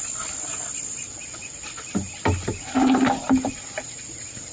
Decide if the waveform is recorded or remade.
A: recorded